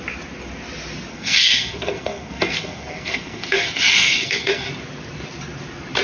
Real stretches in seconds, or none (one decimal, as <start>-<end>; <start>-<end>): 0.0-1.1; 4.7-6.0